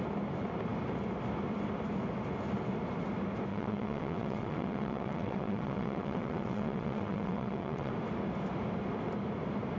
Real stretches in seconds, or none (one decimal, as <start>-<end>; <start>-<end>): 0.0-3.5; 7.9-9.8